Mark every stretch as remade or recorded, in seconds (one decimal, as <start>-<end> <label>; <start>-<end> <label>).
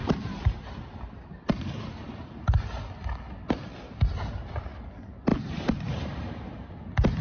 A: 0.0-1.4 remade; 1.4-5.3 recorded; 5.3-6.7 remade; 6.7-7.2 recorded